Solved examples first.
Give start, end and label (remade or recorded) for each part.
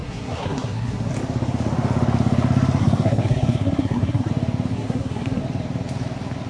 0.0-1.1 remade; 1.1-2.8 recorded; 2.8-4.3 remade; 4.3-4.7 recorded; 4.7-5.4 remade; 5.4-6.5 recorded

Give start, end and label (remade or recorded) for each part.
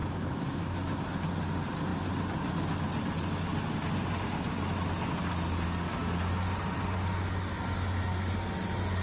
0.0-1.0 remade; 1.0-9.0 recorded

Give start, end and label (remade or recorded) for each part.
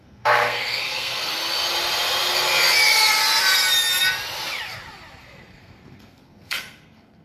0.0-1.3 remade; 1.3-5.2 recorded; 5.2-7.2 remade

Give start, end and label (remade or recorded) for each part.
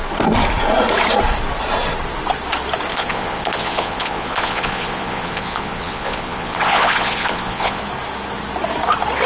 0.0-2.9 recorded; 2.9-7.8 remade; 7.8-9.3 recorded